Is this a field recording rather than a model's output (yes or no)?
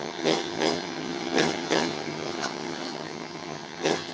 no